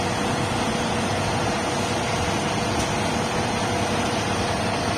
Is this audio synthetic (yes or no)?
no